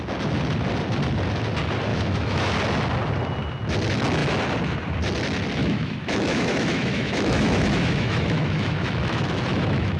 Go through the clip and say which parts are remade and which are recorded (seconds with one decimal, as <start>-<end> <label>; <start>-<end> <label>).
0.0-1.9 recorded; 1.9-2.5 remade; 2.5-5.6 recorded; 5.6-10.0 remade